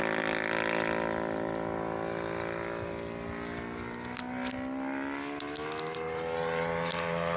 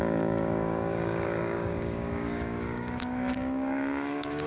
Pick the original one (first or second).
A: first